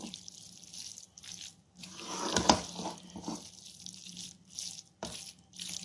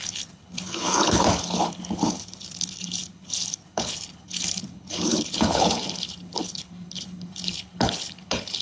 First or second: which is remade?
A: second